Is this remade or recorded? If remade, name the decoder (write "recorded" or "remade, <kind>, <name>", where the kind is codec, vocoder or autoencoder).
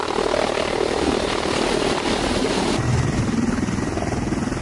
remade, vocoder, BigVGAN v2